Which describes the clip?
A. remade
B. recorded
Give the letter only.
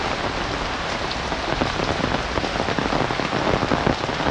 B